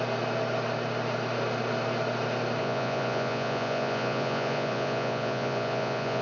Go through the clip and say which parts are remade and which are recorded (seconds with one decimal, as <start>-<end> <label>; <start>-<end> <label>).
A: 0.0-2.6 recorded; 2.6-6.2 remade